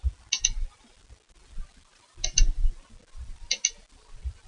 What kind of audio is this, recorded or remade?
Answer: recorded